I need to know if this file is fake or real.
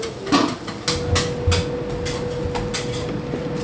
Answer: real